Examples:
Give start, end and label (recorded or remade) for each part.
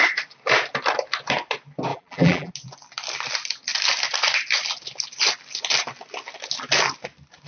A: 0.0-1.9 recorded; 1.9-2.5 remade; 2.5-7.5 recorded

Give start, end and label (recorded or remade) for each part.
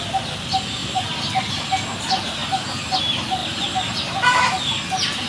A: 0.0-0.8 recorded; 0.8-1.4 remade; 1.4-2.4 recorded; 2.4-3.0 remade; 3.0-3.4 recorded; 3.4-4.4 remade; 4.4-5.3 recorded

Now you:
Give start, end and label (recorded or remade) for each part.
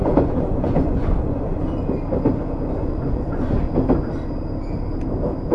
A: 0.0-1.6 remade; 1.6-2.8 recorded; 2.8-3.6 remade; 3.6-5.5 recorded